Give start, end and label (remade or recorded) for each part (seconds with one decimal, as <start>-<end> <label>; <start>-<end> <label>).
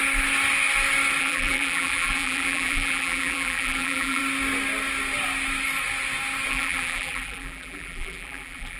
0.0-1.2 recorded; 1.2-4.2 remade; 4.2-6.5 recorded; 6.5-8.8 remade